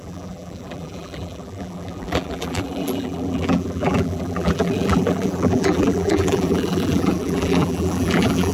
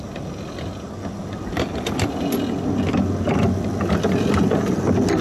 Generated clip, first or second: first